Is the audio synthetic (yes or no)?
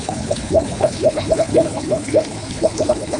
yes